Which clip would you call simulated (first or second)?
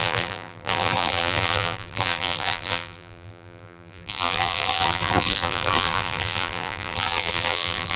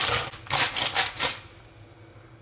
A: first